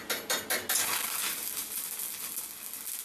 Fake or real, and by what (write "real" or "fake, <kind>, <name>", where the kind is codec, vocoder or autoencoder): real